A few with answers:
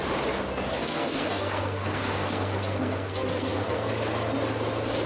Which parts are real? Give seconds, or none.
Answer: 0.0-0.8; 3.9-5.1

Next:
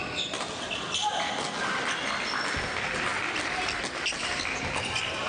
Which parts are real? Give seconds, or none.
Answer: 0.0-5.3

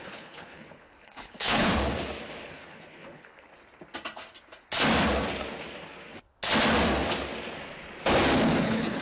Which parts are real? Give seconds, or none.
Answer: 1.7-2.5; 3.5-8.6

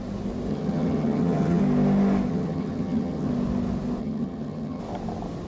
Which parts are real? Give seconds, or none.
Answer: 0.0-0.5; 1.6-2.3; 3.3-4.0; 4.8-5.5